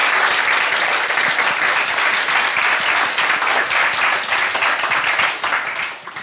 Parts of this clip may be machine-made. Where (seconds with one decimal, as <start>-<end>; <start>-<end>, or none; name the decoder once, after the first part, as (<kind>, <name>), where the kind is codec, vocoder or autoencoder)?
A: none